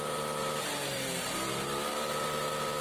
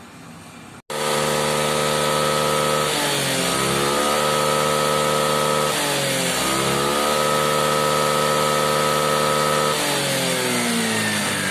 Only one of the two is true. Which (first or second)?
second